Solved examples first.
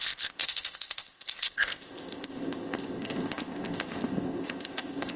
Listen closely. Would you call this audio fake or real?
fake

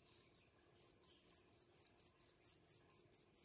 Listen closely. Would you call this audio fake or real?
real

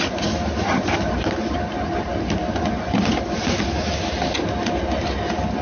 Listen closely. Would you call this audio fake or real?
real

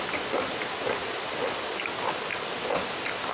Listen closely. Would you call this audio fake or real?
real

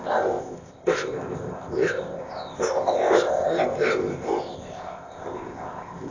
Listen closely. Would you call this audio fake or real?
fake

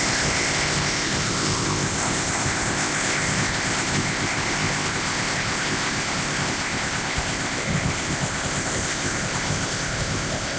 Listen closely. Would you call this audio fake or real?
fake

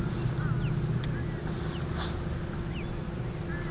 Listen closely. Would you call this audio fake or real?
real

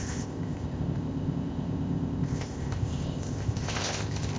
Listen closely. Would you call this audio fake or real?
fake